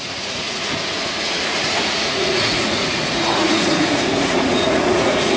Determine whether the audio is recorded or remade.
remade